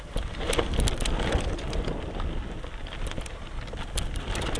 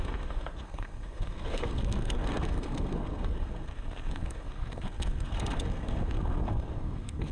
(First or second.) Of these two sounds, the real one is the first